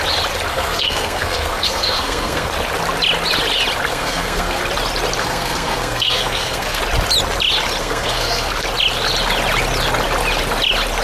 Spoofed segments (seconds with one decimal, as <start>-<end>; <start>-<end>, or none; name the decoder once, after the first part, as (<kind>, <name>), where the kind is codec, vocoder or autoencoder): 0.5-2.5 (codec, SNAC); 3.9-4.6; 5.2-6.8; 7.8-8.5